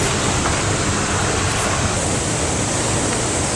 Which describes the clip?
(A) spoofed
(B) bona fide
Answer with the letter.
B